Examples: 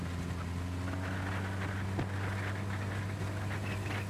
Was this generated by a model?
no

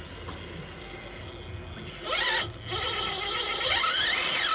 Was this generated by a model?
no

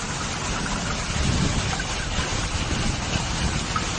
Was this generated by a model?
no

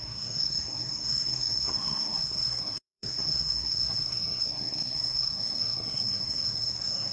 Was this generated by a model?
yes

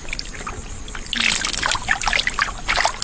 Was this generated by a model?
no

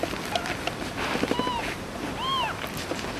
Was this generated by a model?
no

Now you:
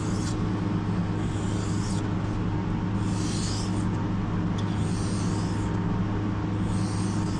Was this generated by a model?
no